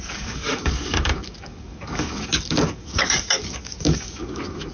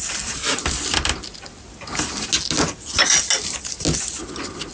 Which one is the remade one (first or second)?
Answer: first